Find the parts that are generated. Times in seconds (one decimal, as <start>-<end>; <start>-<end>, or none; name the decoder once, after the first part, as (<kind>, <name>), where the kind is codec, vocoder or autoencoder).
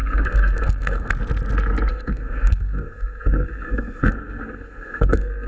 0.0-1.1 (codec, SNAC); 1.9-5.5